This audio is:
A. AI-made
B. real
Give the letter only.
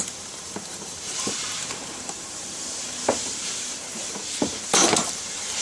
A